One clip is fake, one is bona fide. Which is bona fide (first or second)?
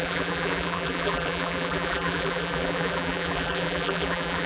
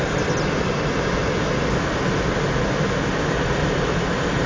second